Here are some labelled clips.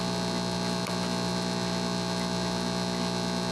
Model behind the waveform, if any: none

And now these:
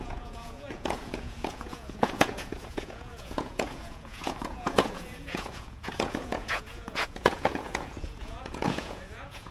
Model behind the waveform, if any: vocoder, Vocos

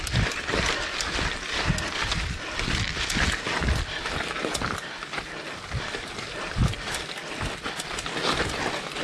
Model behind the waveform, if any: none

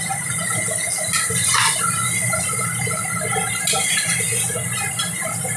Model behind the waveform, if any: none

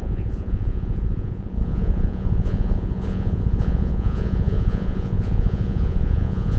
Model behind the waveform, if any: vocoder, Vocos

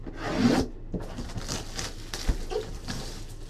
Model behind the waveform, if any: none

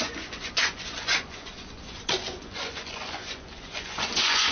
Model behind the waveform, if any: vocoder, Vocos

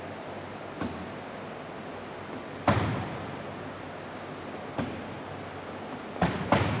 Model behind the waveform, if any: none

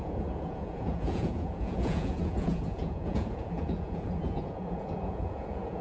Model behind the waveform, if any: vocoder, Vocos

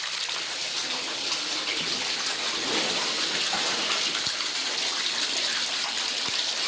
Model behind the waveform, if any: none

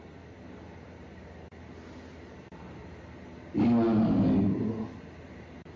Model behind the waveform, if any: none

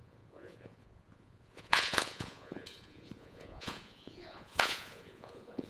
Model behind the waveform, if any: vocoder, Vocos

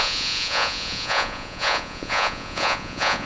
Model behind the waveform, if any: vocoder, Vocos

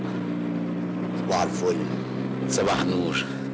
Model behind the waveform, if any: none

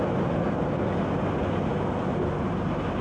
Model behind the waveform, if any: none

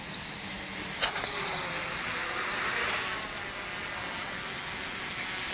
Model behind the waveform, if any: none